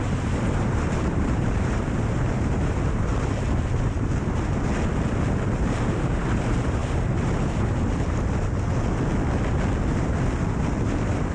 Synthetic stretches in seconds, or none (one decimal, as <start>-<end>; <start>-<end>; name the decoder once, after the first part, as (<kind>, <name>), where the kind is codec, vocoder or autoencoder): 0.0-3.1 (vocoder, BigVGAN v2); 6.2-6.8; 10.9-11.3